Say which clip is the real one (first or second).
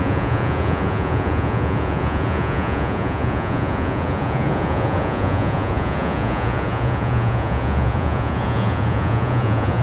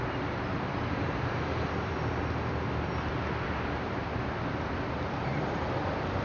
second